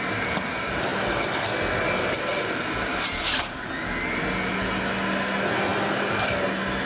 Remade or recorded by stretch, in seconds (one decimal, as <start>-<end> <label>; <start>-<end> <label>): 0.0-6.9 recorded